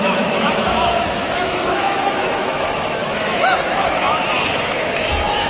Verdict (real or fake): fake